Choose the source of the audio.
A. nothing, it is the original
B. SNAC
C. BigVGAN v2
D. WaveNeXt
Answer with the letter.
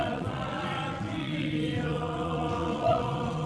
D